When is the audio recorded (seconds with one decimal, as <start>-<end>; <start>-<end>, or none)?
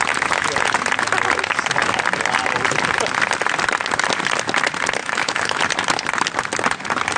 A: 0.0-5.0; 5.6-7.2